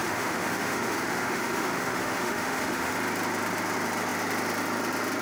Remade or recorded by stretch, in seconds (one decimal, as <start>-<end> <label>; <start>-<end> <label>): 0.0-2.9 remade; 2.9-5.2 recorded